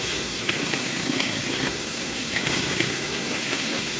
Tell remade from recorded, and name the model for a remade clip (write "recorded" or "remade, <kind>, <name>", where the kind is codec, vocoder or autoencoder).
remade, codec, SNAC